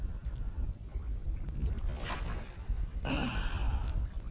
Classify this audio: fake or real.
real